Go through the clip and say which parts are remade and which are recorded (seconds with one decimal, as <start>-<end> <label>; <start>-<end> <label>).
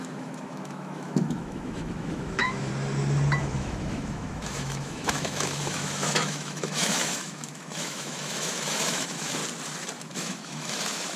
0.0-2.7 remade; 2.7-3.4 recorded; 3.4-9.4 remade; 9.4-10.0 recorded; 10.0-11.2 remade